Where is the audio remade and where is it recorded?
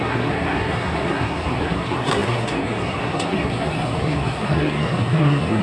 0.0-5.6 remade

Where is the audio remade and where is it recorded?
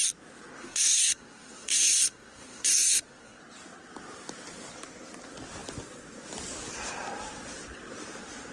0.0-0.6 recorded; 0.6-3.4 remade; 3.4-8.5 recorded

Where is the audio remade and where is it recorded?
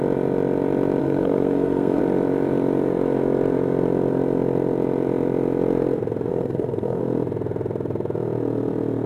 0.0-1.0 recorded; 1.0-2.0 remade; 2.0-6.3 recorded; 6.3-7.0 remade; 7.0-9.1 recorded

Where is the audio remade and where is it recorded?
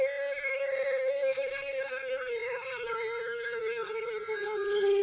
0.0-5.0 remade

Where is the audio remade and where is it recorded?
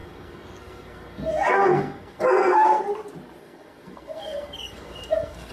0.0-2.8 remade; 2.8-3.4 recorded; 3.4-5.5 remade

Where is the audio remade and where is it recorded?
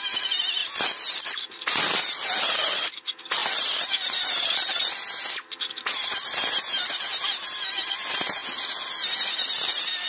0.0-10.1 recorded